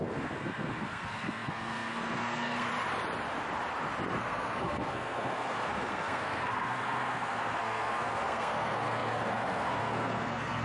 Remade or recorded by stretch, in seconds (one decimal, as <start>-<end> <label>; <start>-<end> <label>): 0.0-2.7 remade; 2.7-4.2 recorded; 4.2-10.6 remade